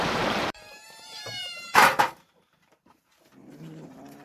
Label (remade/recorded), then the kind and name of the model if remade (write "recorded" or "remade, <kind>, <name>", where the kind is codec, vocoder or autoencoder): remade, vocoder, BigVGAN v2